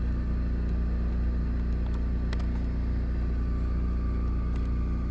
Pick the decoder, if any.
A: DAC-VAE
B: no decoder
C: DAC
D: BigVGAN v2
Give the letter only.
B